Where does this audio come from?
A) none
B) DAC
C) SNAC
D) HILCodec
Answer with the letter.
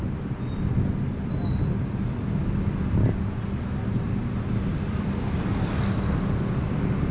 A